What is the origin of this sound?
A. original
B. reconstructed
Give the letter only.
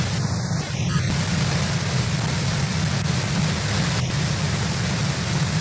A